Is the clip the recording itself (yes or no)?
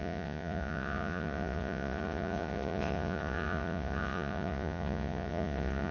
no